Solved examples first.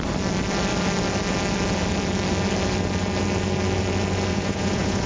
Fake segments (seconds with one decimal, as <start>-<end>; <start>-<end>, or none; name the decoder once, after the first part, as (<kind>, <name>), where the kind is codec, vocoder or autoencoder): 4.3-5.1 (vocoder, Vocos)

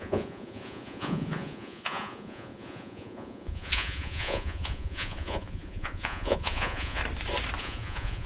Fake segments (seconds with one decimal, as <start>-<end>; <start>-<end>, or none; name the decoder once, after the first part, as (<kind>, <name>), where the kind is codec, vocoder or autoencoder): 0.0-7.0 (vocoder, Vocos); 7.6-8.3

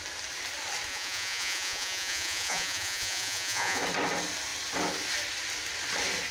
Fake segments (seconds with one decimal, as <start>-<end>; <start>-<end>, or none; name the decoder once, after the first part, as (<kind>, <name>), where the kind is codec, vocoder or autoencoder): 0.9-3.8 (vocoder, Vocos)

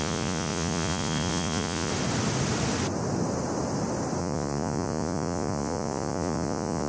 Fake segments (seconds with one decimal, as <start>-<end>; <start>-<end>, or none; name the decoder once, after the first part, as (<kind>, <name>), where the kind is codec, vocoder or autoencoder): 0.0-1.9 (vocoder, Vocos); 4.2-6.9

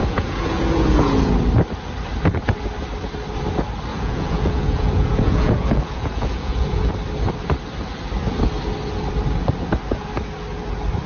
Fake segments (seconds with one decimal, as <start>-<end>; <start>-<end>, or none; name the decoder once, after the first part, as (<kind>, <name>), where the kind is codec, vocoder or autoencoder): 0.0-1.3 (vocoder, Vocos); 3.9-6.9

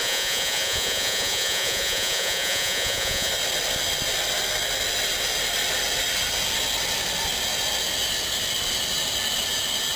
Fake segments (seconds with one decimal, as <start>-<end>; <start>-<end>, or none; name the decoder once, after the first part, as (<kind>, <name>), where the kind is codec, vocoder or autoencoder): 0.0-3.3 (vocoder, Vocos)

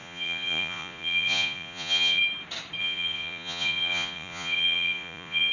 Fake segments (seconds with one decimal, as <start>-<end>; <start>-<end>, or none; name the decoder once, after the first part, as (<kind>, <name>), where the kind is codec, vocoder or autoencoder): 0.0-2.2 (vocoder, Vocos); 2.8-5.5